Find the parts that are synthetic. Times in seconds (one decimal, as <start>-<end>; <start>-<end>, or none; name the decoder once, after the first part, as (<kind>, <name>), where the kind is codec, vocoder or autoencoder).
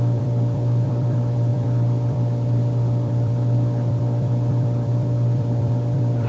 0.0-6.3 (vocoder, BigVGAN v2)